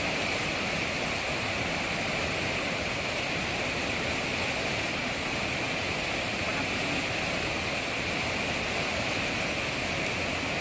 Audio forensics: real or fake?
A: real